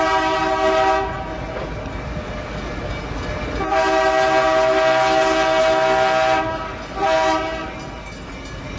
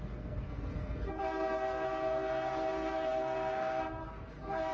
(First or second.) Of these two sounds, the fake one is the second